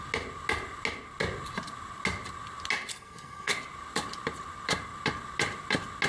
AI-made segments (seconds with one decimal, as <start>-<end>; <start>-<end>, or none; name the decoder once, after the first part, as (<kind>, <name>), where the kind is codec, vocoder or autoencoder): 2.9-3.5 (codec, SNAC)